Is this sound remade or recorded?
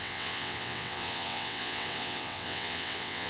remade